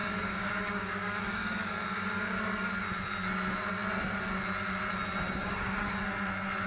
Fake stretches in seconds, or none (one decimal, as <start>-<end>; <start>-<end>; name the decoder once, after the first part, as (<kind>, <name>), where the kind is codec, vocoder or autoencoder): 0.0-2.7 (codec, DAC); 5.4-6.1